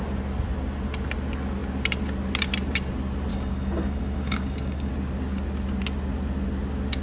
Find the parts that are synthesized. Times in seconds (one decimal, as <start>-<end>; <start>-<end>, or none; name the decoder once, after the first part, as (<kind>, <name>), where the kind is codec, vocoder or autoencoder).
3.3-4.9 (codec, DAC)